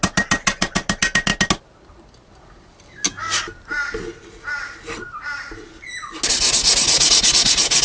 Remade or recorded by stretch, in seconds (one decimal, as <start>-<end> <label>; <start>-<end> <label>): 0.0-7.8 recorded